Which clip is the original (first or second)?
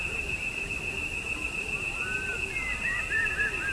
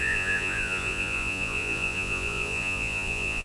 first